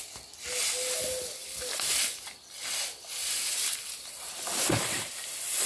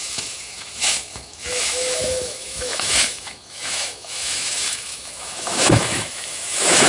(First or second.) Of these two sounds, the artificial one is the second